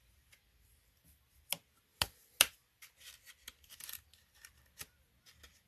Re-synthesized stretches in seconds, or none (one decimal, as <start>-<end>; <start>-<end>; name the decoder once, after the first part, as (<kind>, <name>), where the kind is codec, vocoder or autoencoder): none